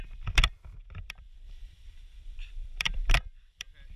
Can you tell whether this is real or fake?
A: fake